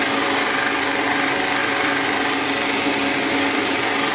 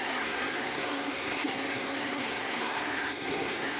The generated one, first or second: second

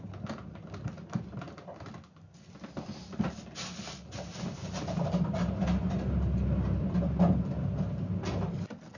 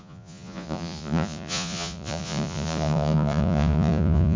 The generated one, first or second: second